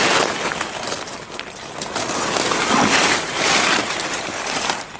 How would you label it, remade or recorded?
recorded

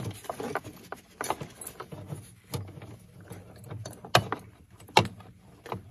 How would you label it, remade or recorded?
recorded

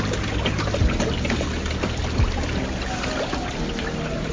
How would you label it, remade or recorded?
recorded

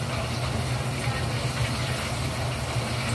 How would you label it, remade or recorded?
recorded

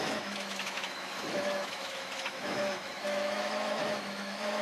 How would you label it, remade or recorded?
remade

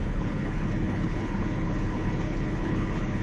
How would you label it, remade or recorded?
remade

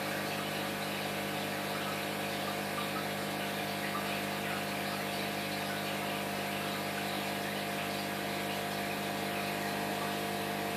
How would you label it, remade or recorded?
recorded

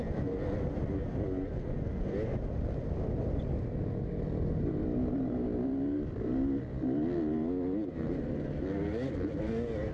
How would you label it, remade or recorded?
recorded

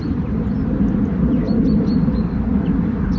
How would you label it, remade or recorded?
recorded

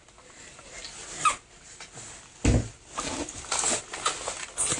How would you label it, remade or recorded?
recorded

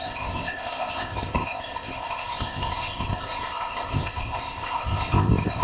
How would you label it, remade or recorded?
remade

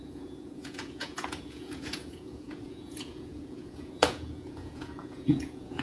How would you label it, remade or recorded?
remade